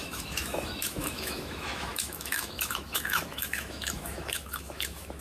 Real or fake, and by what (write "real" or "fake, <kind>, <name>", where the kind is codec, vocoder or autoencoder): fake, autoencoder, DAC-VAE